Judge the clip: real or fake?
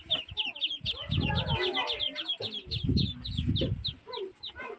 real